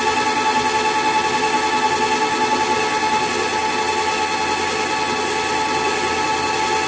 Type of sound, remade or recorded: recorded